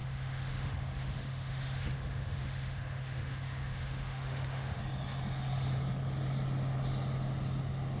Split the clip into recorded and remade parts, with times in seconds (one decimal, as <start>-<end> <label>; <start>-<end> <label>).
0.0-4.8 remade; 4.8-8.0 recorded